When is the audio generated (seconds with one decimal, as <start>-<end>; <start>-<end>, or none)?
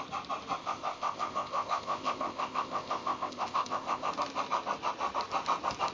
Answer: 0.6-4.1